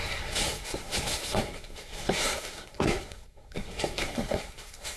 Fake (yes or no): yes